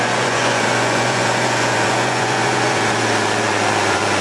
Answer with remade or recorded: remade